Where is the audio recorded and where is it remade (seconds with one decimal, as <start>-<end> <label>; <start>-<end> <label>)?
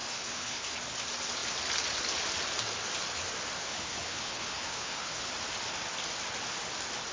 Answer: 0.0-0.7 remade; 0.7-3.6 recorded; 3.6-5.3 remade; 5.3-7.1 recorded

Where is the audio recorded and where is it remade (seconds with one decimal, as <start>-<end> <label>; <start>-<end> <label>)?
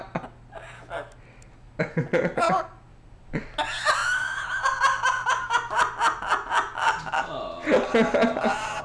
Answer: 0.0-8.8 recorded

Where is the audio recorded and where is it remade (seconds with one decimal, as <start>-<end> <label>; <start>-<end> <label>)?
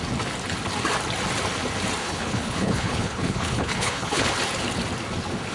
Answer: 0.0-2.0 recorded; 2.0-4.3 remade; 4.3-5.5 recorded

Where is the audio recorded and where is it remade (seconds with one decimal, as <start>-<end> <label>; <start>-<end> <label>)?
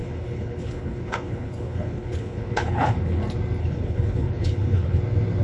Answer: 0.0-3.2 remade; 3.2-3.6 recorded; 3.6-5.0 remade; 5.0-5.4 recorded